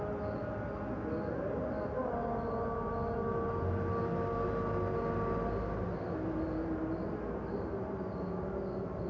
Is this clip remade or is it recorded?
recorded